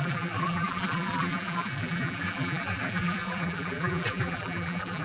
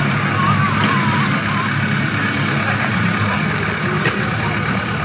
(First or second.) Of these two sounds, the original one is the second